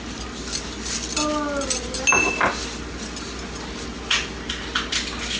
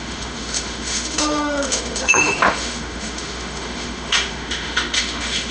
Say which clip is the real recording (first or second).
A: first